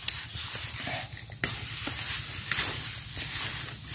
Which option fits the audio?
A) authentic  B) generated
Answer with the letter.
A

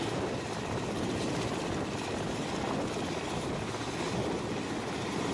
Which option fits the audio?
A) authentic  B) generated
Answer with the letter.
B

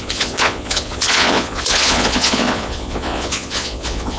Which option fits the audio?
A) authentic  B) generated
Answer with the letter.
B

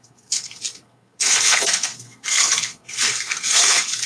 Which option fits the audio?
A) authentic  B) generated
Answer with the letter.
B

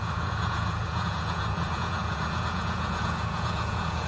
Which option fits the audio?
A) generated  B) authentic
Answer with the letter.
A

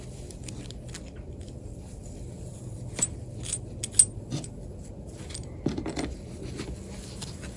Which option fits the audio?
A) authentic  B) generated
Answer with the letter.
A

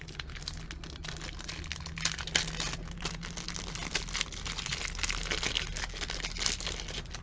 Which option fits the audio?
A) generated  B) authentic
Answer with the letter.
B